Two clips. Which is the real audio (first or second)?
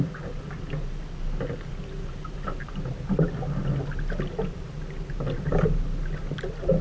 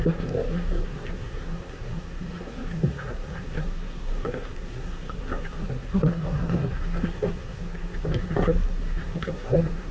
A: first